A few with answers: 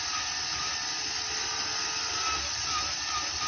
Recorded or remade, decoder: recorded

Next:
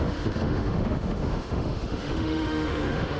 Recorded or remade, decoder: remade, autoencoder, DAC-VAE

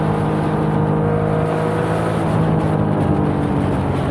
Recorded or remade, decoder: recorded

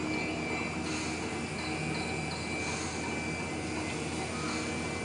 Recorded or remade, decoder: recorded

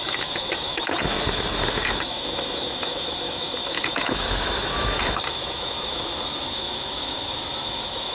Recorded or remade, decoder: remade, autoencoder, DAC-VAE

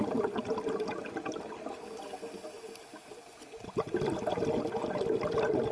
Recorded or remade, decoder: recorded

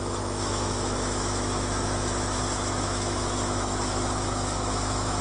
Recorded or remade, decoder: remade, autoencoder, DAC-VAE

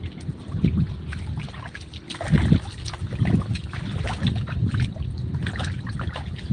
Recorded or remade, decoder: recorded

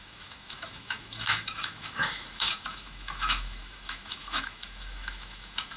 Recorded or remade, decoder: remade, autoencoder, DAC-VAE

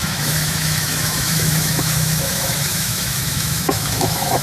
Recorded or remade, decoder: remade, autoencoder, DAC-VAE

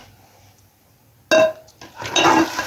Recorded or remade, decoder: recorded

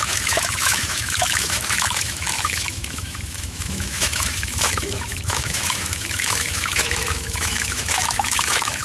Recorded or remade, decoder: remade, autoencoder, DAC-VAE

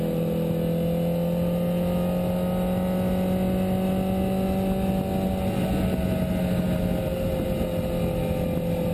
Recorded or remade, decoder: recorded